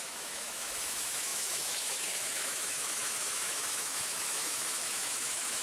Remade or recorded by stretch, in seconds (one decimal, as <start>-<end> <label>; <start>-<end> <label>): 0.0-5.6 remade

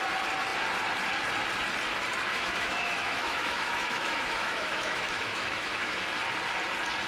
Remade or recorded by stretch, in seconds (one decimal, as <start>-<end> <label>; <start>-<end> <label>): 0.0-2.3 recorded; 2.3-6.2 remade; 6.2-7.1 recorded

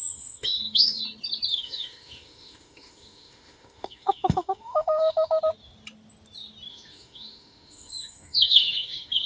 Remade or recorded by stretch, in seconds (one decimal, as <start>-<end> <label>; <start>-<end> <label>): 0.0-1.0 remade; 1.0-1.5 recorded; 1.5-5.4 remade; 5.4-6.7 recorded; 6.7-9.3 remade